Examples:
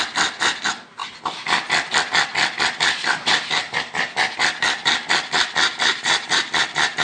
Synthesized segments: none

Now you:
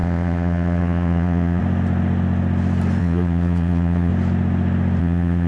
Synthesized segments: 0.0-1.6 (vocoder, Vocos); 3.0-4.1; 5.0-5.5

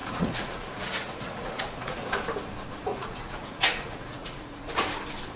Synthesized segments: 0.0-2.1 (vocoder, Vocos); 2.9-4.7

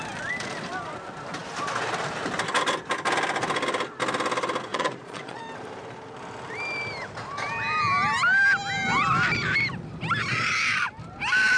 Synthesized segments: 4.7-5.4 (vocoder, Vocos)

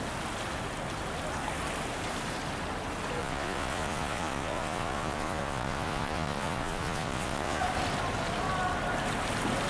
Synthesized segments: 3.2-7.6 (vocoder, Vocos)

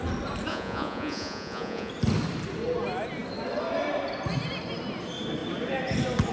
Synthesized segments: 0.5-1.9 (vocoder, Vocos)

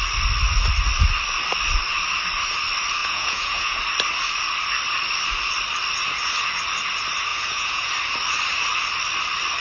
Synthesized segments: 3.0-3.8 (vocoder, Vocos); 7.3-7.9